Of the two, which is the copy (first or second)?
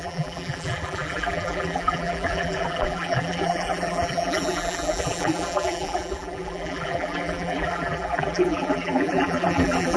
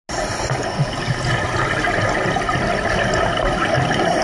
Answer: first